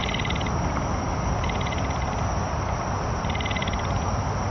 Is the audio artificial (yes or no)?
no